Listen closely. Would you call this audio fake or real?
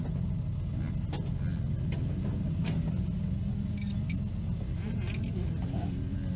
real